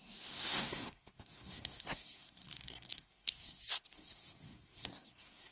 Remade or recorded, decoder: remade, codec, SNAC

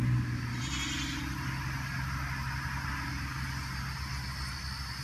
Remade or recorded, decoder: recorded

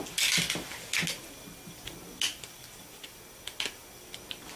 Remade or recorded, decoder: recorded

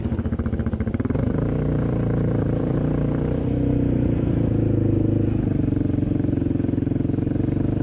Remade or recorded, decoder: remade, vocoder, BigVGAN v2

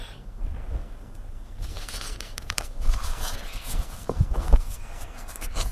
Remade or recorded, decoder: remade, codec, SNAC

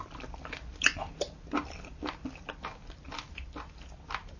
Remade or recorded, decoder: recorded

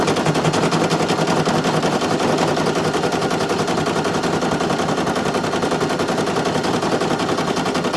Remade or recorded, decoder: recorded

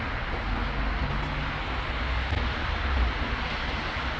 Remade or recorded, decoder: recorded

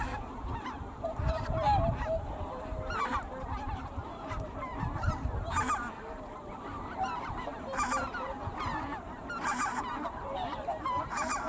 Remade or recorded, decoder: remade, vocoder, BigVGAN v2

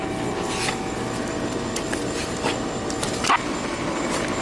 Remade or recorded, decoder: recorded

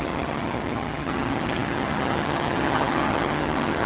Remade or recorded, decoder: remade, vocoder, HiFi-GAN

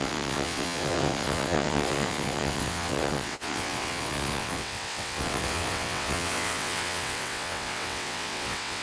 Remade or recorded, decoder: remade, vocoder, WaveNeXt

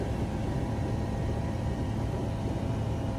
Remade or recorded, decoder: remade, vocoder, BigVGAN v2